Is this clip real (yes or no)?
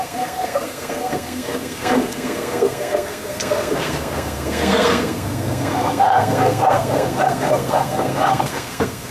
no